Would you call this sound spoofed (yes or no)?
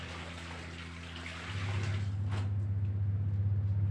no